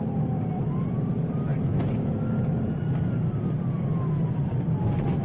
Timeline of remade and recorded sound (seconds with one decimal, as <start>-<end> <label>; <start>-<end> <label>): 0.0-5.2 recorded